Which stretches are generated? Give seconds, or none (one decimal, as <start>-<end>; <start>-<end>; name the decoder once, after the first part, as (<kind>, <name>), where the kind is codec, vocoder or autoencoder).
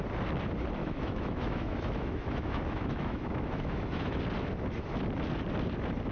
0.8-4.2 (autoencoder, DAC-VAE)